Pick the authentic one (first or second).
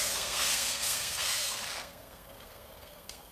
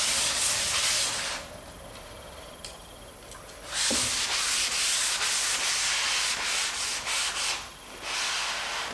second